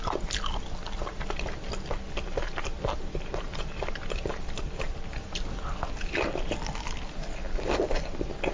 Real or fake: real